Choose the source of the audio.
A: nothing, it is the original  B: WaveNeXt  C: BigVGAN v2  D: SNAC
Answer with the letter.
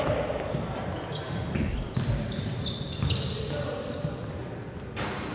A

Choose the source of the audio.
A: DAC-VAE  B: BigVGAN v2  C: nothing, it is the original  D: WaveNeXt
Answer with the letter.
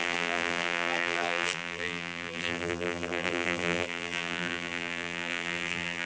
B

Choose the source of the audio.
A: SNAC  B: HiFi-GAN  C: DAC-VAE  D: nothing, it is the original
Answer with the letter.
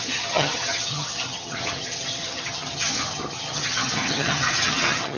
B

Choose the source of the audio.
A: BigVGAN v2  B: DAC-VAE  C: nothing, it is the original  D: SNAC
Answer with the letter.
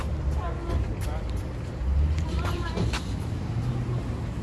A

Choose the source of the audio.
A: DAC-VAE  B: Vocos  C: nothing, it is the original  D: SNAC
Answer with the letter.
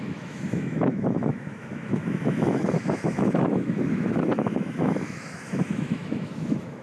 A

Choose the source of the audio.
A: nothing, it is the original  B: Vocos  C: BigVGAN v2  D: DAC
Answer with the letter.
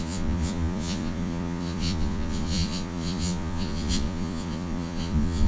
B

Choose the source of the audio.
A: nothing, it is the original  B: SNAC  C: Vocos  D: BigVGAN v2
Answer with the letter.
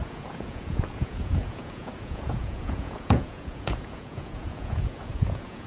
C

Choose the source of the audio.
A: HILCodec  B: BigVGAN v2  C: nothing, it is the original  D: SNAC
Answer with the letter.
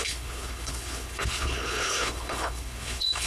A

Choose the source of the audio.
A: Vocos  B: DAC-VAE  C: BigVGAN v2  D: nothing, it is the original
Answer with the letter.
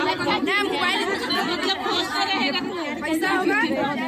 D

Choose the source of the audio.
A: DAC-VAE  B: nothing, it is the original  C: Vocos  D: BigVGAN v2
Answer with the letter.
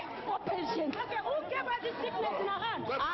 B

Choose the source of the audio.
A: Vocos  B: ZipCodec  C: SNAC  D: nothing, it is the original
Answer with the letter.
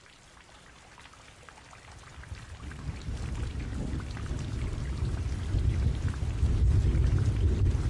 D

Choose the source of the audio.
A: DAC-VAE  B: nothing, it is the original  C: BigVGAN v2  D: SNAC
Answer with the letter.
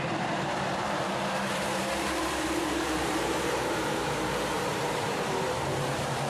C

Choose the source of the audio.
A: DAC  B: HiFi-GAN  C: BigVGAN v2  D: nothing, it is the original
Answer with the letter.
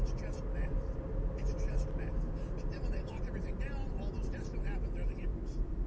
D